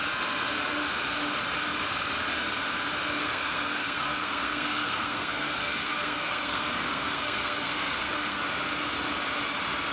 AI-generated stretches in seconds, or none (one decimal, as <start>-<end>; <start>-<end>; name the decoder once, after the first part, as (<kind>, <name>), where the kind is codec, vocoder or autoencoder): 3.2-8.4 (codec, SNAC)